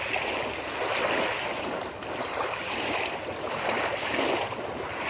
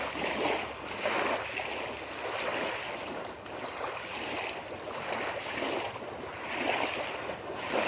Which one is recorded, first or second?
second